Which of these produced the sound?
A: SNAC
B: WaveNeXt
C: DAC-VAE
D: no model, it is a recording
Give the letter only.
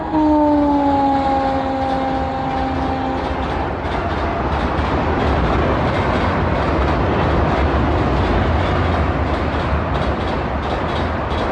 D